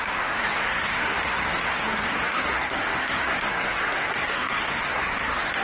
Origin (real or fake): fake